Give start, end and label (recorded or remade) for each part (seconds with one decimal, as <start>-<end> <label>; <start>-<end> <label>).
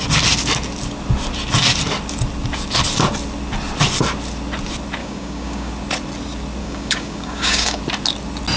0.0-5.0 recorded; 5.0-5.7 remade; 5.7-6.6 recorded; 6.6-7.8 remade; 7.8-8.6 recorded